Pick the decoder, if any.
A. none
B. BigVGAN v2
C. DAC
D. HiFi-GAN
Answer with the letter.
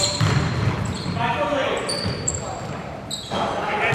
B